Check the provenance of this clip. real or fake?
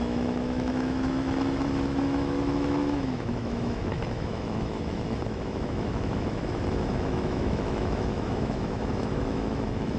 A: fake